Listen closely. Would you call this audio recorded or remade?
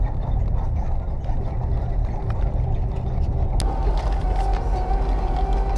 recorded